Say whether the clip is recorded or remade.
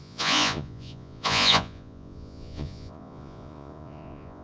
remade